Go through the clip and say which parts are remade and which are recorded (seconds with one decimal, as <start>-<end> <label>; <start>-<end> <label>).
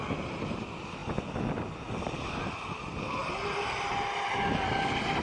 0.0-5.2 recorded